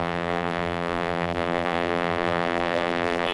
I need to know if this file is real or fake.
fake